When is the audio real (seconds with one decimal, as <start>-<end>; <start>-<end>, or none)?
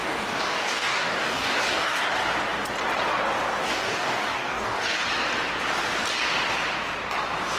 2.1-3.6; 5.1-7.6